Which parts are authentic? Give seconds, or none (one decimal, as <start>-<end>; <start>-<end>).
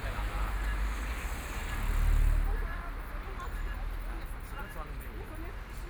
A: 0.0-5.9